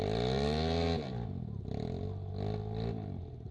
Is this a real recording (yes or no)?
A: yes